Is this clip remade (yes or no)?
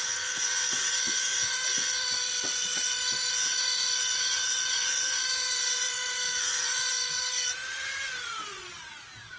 yes